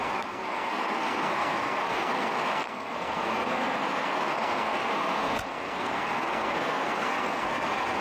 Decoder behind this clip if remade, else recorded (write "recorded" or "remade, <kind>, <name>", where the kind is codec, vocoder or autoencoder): remade, codec, SNAC